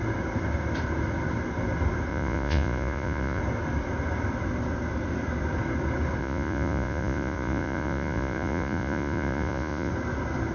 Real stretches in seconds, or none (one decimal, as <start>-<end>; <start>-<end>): 0.0-2.1; 3.4-6.2; 9.9-10.5